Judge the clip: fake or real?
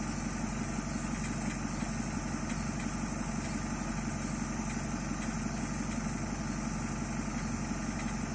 real